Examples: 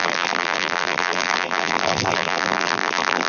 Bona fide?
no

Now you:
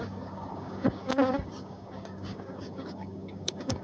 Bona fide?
no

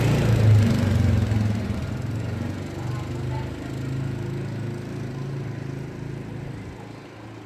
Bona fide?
yes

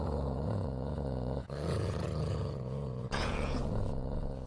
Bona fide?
no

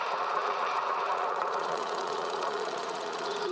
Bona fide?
no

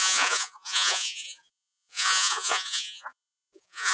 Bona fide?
no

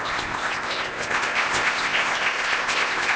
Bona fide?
no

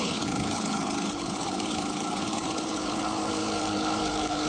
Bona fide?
no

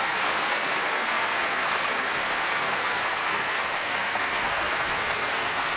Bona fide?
no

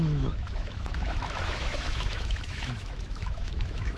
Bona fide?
no